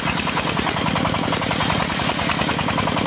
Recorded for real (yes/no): yes